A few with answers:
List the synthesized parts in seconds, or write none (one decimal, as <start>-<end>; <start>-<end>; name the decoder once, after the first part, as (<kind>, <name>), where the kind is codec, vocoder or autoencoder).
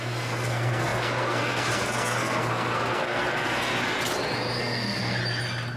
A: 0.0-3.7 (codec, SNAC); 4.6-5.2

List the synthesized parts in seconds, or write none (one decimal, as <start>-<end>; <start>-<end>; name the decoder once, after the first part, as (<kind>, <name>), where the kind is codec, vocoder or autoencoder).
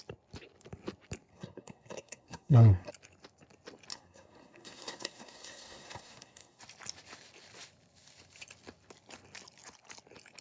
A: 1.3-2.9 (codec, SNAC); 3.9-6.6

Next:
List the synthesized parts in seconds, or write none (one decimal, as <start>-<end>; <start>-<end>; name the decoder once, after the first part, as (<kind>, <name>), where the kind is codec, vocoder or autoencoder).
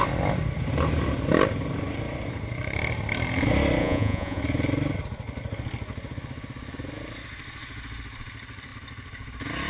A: 3.8-4.4 (vocoder, Vocos)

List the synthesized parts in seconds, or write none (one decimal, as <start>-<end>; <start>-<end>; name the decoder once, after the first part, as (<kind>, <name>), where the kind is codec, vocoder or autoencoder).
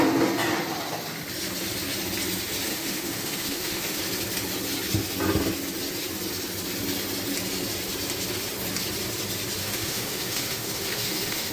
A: 2.7-4.0 (autoencoder, DAC-VAE); 9.6-11.5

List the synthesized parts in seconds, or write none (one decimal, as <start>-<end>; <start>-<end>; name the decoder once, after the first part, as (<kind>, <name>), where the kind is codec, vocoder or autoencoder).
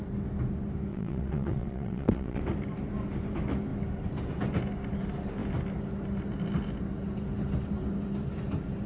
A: 0.9-2.4 (vocoder, WaveNeXt)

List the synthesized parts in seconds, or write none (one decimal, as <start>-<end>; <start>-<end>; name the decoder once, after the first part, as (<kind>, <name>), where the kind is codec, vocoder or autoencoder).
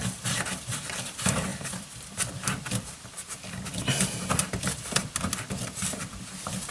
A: 0.0-4.4 (vocoder, BigVGAN v2); 5.5-6.7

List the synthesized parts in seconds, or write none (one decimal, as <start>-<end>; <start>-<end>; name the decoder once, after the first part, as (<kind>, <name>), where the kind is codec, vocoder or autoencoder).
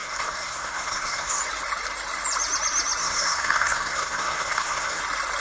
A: 0.0-1.4 (codec, SNAC); 3.0-5.0